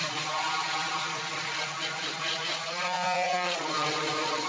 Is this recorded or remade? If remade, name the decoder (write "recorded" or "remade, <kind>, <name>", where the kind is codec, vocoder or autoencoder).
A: remade, vocoder, Vocos